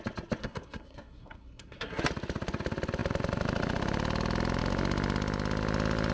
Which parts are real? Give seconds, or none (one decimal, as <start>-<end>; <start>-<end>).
0.0-0.4; 2.0-6.1